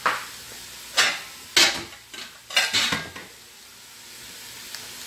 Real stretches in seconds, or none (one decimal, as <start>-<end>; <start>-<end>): 0.0-5.1